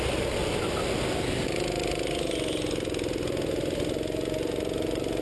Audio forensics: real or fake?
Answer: real